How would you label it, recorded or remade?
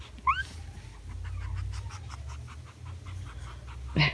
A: recorded